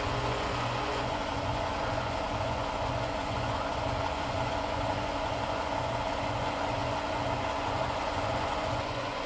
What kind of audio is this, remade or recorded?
remade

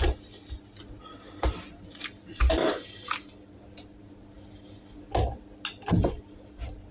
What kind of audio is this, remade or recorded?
recorded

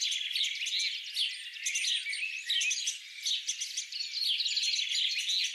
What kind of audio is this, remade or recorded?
recorded